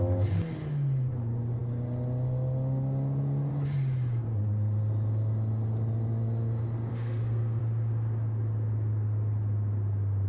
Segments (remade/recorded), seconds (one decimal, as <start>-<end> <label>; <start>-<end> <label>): 0.0-6.9 recorded; 6.9-7.6 remade; 7.6-10.3 recorded